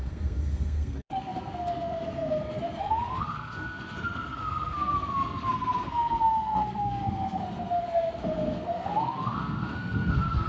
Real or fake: fake